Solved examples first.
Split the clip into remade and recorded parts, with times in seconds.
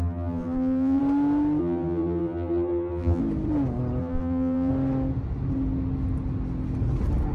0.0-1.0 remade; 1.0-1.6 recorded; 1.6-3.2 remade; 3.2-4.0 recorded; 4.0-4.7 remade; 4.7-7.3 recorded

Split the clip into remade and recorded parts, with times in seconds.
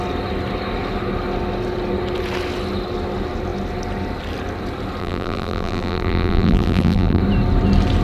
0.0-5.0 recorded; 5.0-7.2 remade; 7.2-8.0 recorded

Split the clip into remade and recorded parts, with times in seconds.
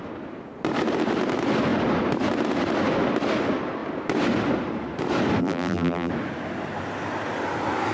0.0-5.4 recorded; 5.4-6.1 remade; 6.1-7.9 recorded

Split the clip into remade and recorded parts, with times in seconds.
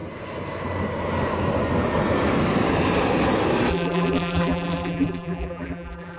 0.0-3.7 recorded; 3.7-6.2 remade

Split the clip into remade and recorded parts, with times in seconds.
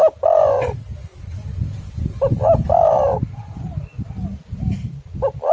0.0-0.9 recorded; 0.9-2.3 remade; 2.3-5.5 recorded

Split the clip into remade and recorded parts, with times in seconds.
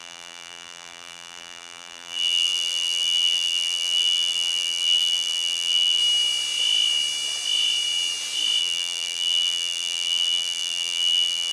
0.0-6.0 remade; 6.0-8.6 recorded; 8.6-11.5 remade